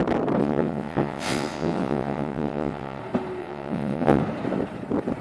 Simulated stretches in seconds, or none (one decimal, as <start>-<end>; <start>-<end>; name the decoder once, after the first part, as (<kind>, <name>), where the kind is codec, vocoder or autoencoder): 0.4-3.0 (vocoder, WaveNeXt); 3.4-4.2